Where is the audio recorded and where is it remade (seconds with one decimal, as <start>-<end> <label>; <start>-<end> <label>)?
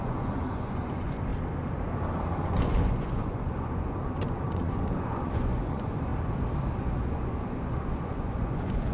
0.0-1.3 remade; 1.3-2.4 recorded; 2.4-6.1 remade; 6.1-6.8 recorded; 6.8-8.9 remade